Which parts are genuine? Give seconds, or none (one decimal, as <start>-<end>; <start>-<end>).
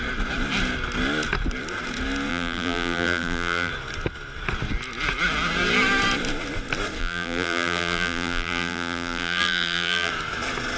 0.0-2.3; 3.7-7.0; 10.1-10.8